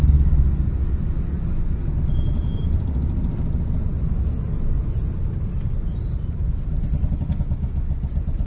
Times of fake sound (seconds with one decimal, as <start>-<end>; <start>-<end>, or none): none

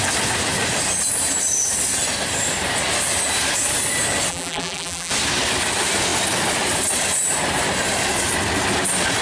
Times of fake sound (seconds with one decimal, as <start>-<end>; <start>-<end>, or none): 4.3-5.1

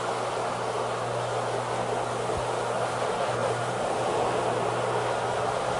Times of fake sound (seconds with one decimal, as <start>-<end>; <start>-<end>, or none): 3.4-4.1

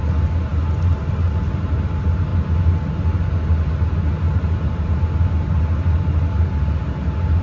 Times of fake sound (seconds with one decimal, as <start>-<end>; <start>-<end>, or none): none

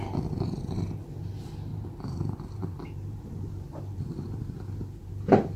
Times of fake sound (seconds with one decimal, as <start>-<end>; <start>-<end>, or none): 1.7-5.1

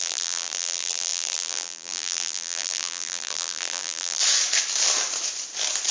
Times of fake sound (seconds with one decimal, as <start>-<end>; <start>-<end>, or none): 0.0-4.2

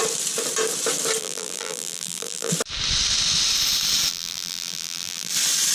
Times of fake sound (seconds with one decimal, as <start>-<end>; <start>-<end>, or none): 1.2-2.5; 4.1-5.3